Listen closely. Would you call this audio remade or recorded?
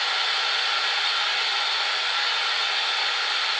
recorded